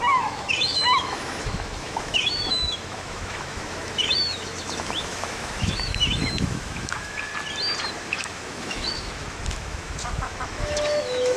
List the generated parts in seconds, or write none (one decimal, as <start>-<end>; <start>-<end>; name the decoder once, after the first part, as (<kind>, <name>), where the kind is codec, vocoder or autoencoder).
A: 0.0-7.3 (autoencoder, DAC-VAE); 7.9-11.4